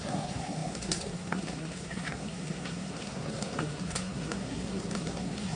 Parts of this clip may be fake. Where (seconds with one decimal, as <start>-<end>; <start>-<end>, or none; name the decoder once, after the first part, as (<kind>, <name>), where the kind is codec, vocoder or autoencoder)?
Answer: 0.0-5.6 (codec, SNAC)